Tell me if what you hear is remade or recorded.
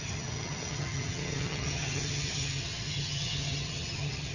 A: remade